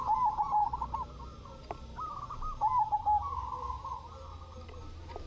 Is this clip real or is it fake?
real